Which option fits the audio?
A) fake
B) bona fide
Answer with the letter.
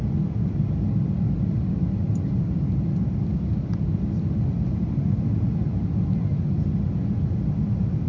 B